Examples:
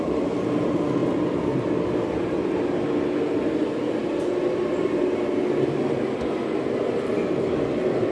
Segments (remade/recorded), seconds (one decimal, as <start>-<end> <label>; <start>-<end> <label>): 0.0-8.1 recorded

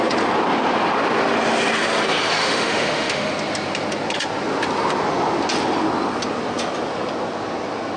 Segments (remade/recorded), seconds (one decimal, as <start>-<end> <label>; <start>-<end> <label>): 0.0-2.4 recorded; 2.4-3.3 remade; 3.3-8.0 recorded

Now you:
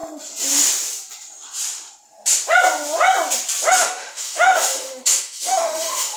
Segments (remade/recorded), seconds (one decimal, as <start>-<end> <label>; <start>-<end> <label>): 0.0-3.7 recorded; 3.7-6.2 remade

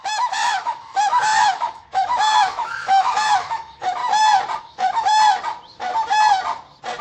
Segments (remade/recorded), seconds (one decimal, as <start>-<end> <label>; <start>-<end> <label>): 0.0-4.0 remade; 4.0-4.6 recorded; 4.6-5.1 remade; 5.1-7.0 recorded

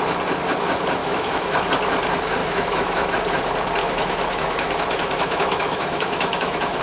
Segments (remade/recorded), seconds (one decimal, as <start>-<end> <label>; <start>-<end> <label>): 0.0-1.0 recorded; 1.0-1.7 remade; 1.7-2.4 recorded; 2.4-3.1 remade; 3.1-3.8 recorded; 3.8-6.8 remade

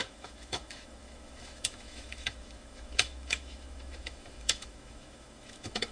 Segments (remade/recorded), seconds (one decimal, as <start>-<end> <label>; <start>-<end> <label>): 0.0-5.9 remade

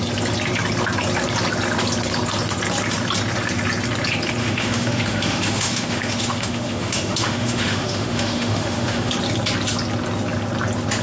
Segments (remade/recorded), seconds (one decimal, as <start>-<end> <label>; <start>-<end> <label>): 0.0-4.4 recorded; 4.4-9.1 remade; 9.1-11.0 recorded

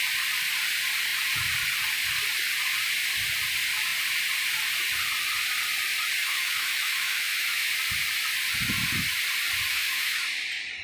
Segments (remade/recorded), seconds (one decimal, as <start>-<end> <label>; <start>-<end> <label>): 0.0-6.2 recorded; 6.2-7.7 remade; 7.7-9.7 recorded; 9.7-10.2 remade; 10.2-10.8 recorded